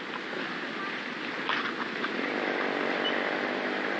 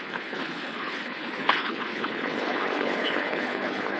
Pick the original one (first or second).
first